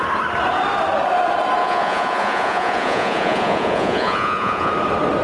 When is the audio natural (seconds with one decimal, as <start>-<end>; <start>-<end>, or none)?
0.0-1.6; 4.7-5.2